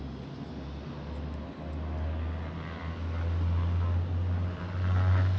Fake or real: real